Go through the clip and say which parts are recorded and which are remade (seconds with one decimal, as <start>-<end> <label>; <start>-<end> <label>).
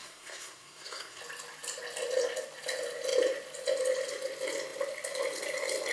0.0-1.2 remade; 1.2-5.9 recorded